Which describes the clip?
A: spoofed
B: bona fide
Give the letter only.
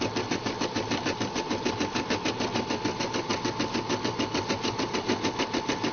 B